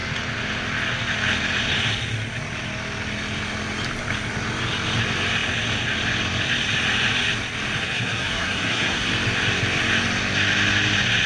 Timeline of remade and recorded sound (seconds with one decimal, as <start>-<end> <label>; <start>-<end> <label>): 0.0-7.8 recorded; 7.8-9.1 remade; 9.1-11.3 recorded